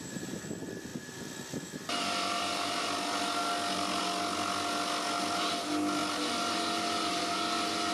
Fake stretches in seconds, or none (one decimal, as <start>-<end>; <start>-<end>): none